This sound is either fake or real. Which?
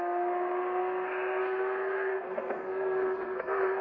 fake